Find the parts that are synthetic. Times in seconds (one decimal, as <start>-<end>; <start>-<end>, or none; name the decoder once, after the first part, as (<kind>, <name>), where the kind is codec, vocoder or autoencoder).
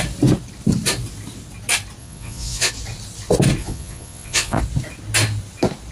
2.0-2.7 (vocoder, Vocos); 3.6-4.6